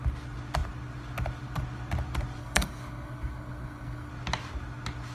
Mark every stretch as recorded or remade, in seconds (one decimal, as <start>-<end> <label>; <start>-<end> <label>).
0.0-2.4 recorded; 2.4-4.1 remade; 4.1-5.1 recorded